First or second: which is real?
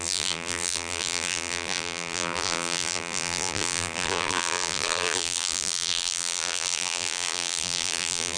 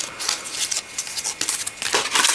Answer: second